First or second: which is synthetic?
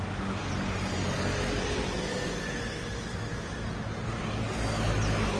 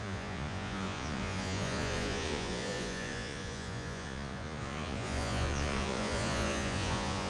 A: second